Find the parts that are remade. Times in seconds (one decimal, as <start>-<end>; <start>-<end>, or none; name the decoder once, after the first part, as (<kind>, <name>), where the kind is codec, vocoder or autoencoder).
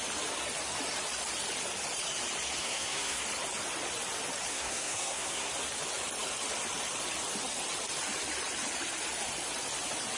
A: 2.6-3.2 (codec, SNAC); 4.5-5.5